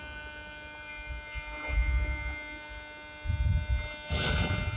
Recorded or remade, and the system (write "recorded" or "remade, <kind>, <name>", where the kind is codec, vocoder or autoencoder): recorded